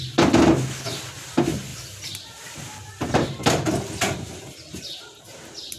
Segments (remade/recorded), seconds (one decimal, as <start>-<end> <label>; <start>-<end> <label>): 0.0-1.7 recorded; 1.7-5.2 remade; 5.2-5.8 recorded